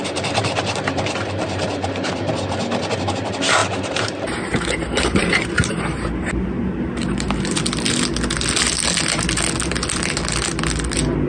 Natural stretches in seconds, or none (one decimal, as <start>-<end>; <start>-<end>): 2.1-3.6; 7.4-11.3